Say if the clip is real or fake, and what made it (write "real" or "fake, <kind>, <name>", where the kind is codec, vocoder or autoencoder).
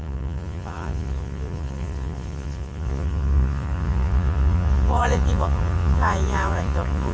fake, vocoder, Vocos